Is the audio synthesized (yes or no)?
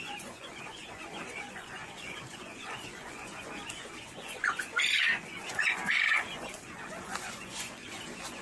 yes